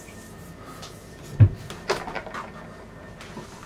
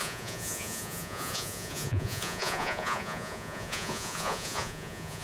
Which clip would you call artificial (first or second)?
second